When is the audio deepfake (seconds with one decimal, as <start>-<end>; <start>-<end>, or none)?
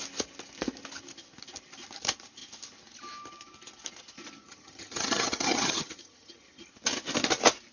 4.4-6.7